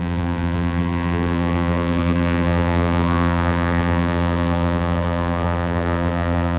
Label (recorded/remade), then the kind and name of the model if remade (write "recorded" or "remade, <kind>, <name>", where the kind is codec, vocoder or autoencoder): remade, vocoder, BigVGAN v2